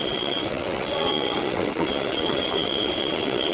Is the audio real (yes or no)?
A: no